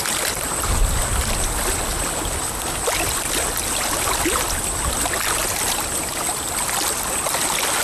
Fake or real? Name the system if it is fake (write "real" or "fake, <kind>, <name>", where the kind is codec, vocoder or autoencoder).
real